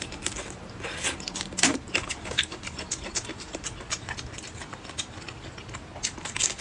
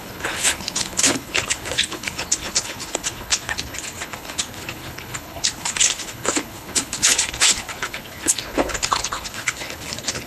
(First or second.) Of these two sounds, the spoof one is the second